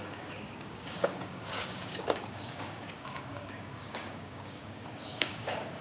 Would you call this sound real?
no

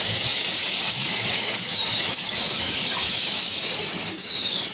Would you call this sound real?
no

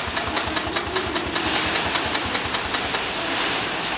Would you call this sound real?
yes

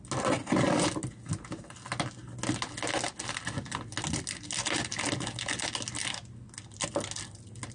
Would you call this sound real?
yes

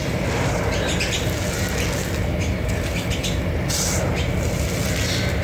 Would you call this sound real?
yes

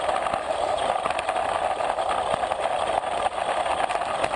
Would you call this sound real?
yes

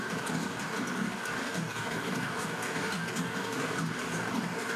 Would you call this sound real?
no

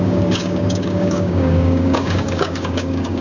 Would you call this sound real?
no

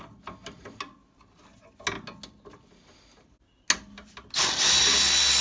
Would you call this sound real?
yes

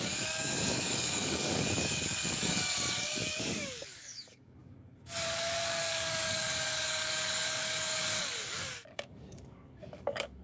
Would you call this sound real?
no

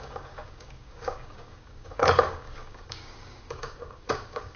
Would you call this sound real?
no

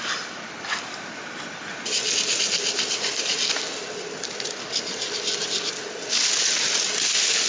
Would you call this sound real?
yes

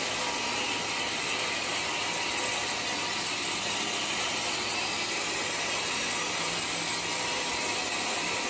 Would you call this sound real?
yes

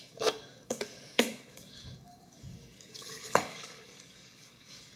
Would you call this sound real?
no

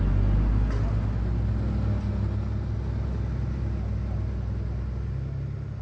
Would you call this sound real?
yes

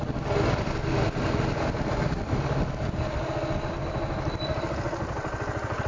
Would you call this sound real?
yes